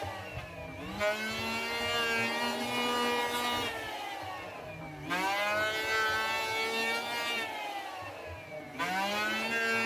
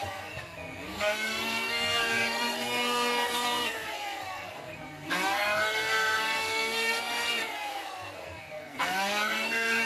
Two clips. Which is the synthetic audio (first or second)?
second